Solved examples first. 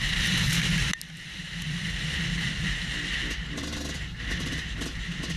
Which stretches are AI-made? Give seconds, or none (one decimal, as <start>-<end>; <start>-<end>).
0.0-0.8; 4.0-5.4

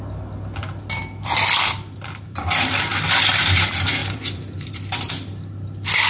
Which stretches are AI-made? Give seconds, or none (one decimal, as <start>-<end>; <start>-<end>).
1.0-2.9; 4.0-5.1

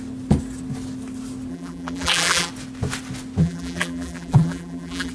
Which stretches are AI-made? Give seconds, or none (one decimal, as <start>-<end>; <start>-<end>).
1.5-2.5; 3.4-5.1

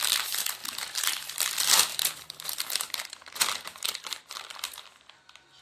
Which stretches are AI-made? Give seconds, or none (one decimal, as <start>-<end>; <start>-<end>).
0.6-1.3; 1.9-4.3

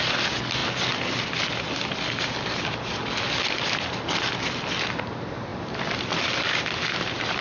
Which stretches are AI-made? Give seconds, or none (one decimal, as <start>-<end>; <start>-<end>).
none

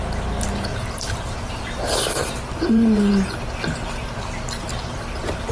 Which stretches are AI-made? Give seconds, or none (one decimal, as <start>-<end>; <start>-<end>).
0.7-1.6; 2.2-3.1; 4.8-5.5

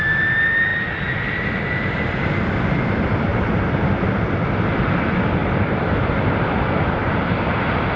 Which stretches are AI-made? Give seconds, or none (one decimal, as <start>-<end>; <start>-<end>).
5.4-7.0

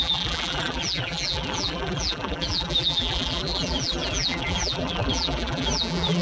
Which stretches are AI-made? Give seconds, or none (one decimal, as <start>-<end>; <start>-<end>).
0.0-6.2